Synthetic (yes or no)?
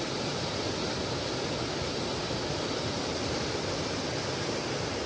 no